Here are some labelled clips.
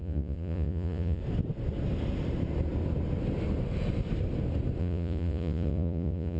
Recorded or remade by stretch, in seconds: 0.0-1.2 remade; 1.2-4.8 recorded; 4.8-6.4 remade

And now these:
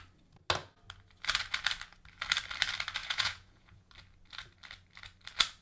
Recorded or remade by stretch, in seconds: 0.0-3.0 recorded; 3.0-3.9 remade; 3.9-5.6 recorded

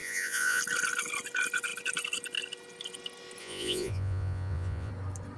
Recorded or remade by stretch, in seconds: 0.0-0.6 remade; 0.6-3.4 recorded; 3.4-4.9 remade; 4.9-5.4 recorded

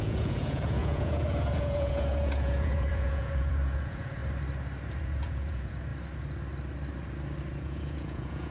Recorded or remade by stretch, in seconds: 0.0-4.2 remade; 4.2-5.0 recorded; 5.0-5.9 remade; 5.9-7.5 recorded; 7.5-8.5 remade

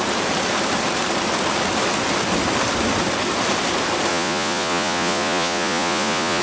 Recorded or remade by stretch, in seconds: 0.0-4.1 recorded; 4.1-6.4 remade

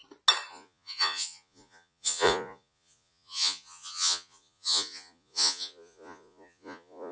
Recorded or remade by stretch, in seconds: 0.0-0.5 recorded; 0.5-7.1 remade

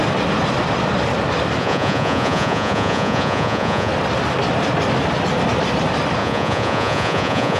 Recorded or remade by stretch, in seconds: 0.0-1.6 recorded; 1.6-3.9 remade; 3.9-6.2 recorded; 6.2-7.6 remade